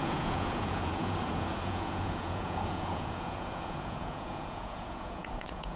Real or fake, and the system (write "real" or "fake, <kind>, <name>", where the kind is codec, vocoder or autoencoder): fake, vocoder, Vocos